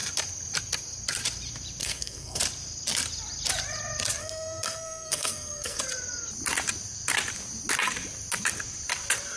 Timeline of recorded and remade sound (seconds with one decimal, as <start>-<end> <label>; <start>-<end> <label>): 0.0-1.8 recorded; 1.8-2.4 remade; 2.4-4.2 recorded; 4.2-5.8 remade; 5.8-9.4 recorded